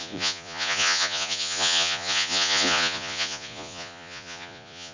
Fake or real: fake